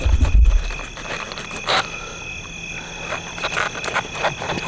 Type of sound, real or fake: real